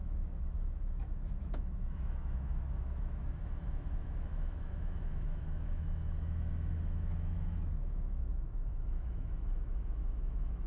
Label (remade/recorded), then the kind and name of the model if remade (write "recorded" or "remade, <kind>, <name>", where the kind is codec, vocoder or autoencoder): remade, autoencoder, DAC-VAE